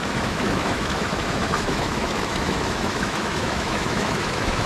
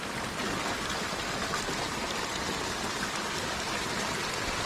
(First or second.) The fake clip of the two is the first